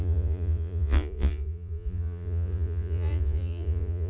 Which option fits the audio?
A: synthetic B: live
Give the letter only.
A